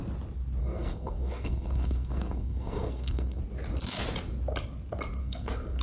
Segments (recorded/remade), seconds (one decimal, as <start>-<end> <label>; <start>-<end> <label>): 0.0-0.6 recorded; 0.6-3.4 remade; 3.4-5.2 recorded; 5.2-5.8 remade